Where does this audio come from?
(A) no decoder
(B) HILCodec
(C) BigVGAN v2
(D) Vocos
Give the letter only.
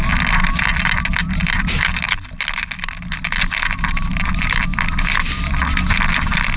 A